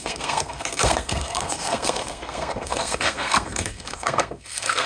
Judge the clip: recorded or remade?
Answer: remade